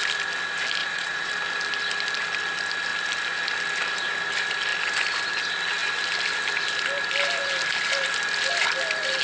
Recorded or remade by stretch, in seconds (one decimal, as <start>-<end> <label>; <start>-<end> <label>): 0.0-0.8 recorded; 0.8-1.3 remade; 1.3-9.2 recorded